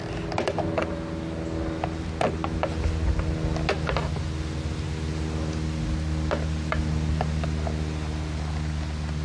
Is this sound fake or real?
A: real